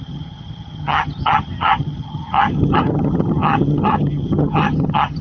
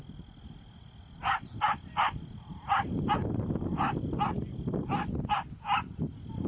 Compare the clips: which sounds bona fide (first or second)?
second